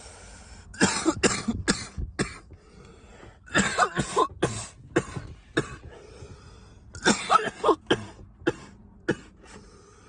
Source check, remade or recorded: recorded